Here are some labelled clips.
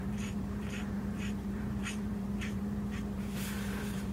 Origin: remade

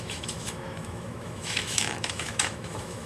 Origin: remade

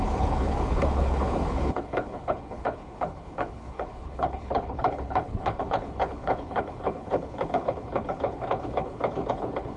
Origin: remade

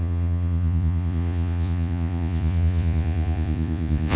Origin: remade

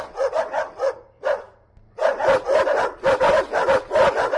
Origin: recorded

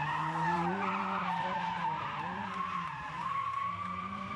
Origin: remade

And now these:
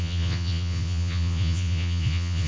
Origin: remade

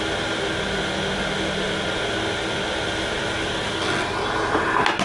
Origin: recorded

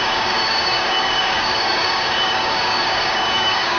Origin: remade